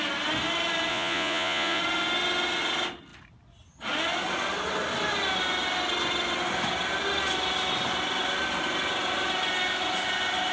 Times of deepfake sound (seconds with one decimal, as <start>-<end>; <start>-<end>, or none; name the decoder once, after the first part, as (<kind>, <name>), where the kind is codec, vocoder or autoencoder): 0.9-1.8 (vocoder, Vocos)